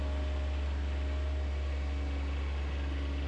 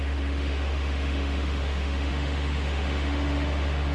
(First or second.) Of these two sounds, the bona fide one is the first